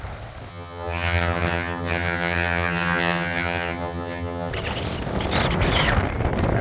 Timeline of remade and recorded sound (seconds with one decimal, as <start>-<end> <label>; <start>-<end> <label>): 0.0-0.5 recorded; 0.5-4.5 remade; 4.5-6.6 recorded